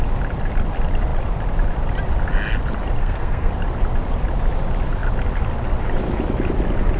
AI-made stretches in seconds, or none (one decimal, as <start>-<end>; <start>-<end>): 3.0-3.5